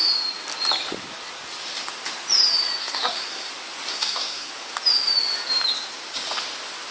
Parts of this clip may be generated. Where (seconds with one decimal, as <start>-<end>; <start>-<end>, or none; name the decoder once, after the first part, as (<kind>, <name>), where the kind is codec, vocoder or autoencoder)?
2.8-3.5 (codec, SNAC); 3.9-4.5